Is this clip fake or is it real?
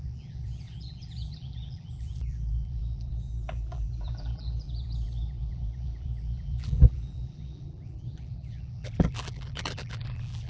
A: fake